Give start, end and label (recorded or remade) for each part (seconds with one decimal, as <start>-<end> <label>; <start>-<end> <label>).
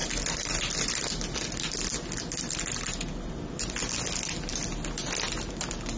0.0-6.0 recorded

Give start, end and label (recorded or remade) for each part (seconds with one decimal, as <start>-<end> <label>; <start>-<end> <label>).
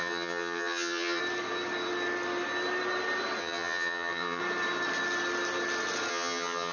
0.0-1.2 remade; 1.2-3.4 recorded; 3.4-4.4 remade; 4.4-6.1 recorded; 6.1-6.7 remade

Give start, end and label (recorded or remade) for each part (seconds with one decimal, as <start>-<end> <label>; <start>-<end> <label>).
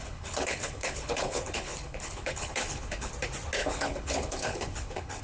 0.0-3.1 remade; 3.1-3.6 recorded; 3.6-5.2 remade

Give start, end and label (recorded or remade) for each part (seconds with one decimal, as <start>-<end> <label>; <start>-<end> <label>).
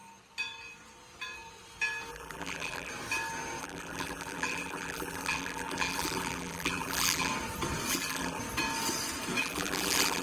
0.0-2.1 recorded; 2.1-2.9 remade; 2.9-3.6 recorded; 3.6-7.3 remade; 7.3-7.9 recorded; 7.9-8.4 remade; 8.4-9.4 recorded; 9.4-10.2 remade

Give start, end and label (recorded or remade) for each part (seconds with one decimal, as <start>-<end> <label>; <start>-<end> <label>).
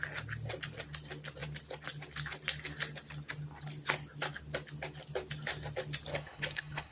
0.0-6.1 recorded; 6.1-6.9 remade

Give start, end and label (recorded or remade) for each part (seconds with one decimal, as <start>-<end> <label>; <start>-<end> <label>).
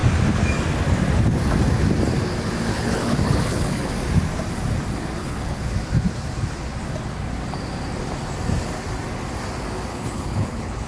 0.0-2.7 recorded; 2.7-3.9 remade; 3.9-5.2 recorded; 5.2-5.7 remade; 5.7-9.9 recorded; 9.9-10.9 remade